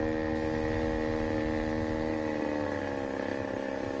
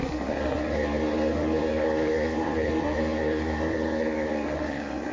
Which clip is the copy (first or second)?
second